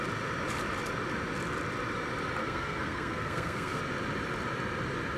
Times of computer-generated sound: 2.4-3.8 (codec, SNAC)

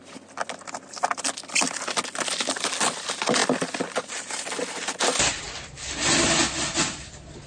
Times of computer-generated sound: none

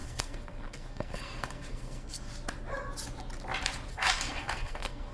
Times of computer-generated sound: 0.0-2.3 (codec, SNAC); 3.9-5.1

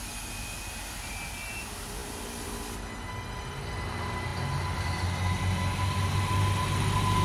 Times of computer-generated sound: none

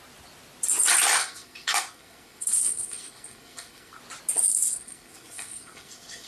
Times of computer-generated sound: 1.2-4.0 (codec, SNAC); 4.5-6.3

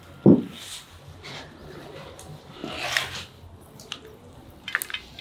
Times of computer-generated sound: none

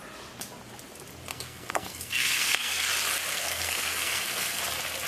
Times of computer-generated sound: 1.3-2.9 (codec, SNAC); 3.3-4.6